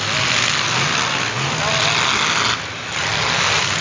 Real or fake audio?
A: real